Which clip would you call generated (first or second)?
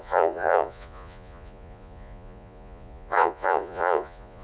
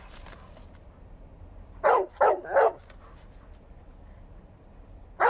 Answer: first